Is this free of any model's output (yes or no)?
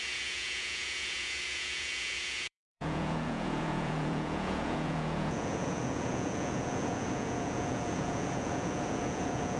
no